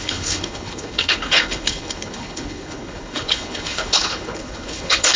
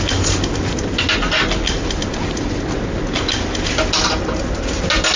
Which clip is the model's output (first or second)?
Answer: first